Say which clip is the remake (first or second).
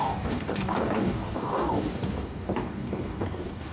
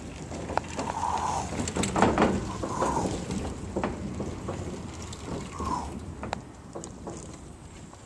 first